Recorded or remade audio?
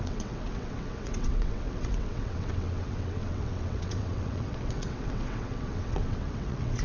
remade